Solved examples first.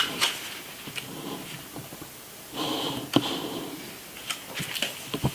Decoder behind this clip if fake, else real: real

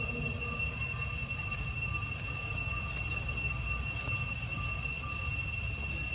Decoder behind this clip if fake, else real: real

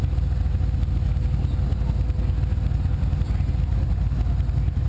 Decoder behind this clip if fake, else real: real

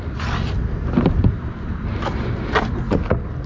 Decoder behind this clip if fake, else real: real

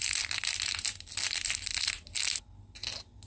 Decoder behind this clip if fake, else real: real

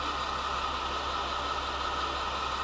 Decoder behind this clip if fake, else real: real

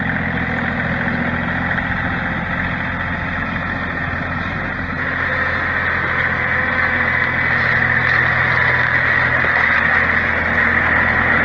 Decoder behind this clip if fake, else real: real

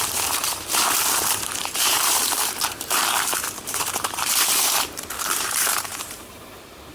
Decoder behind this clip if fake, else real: fake, vocoder, BigVGAN v2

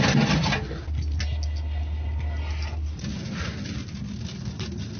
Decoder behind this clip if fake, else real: real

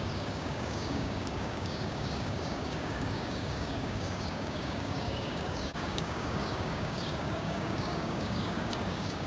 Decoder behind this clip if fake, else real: fake, codec, DAC